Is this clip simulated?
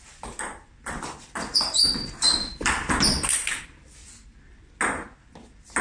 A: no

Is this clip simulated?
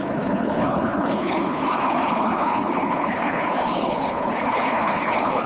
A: yes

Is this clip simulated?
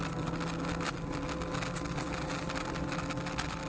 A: no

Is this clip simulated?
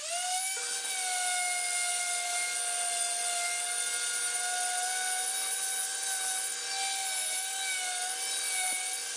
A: no